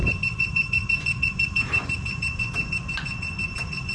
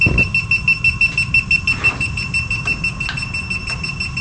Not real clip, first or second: first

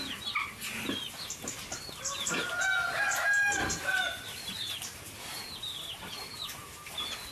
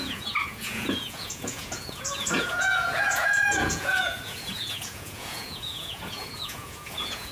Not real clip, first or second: second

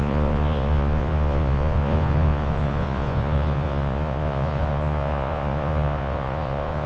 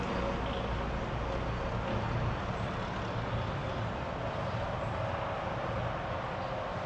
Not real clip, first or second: first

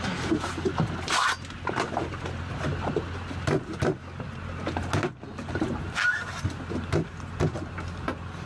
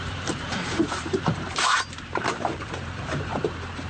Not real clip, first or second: second